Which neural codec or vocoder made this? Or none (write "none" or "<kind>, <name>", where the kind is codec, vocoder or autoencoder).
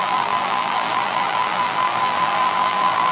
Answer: vocoder, BigVGAN v2